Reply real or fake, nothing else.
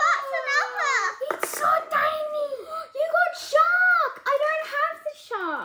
real